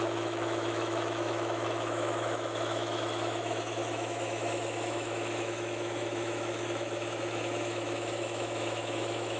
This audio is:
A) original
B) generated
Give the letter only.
B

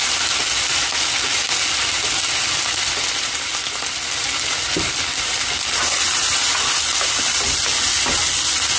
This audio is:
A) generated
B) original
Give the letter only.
B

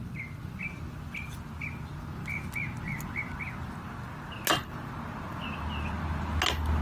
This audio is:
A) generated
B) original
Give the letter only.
B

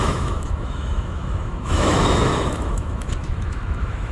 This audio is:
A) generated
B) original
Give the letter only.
A